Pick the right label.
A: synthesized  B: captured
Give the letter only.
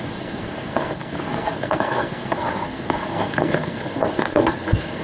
A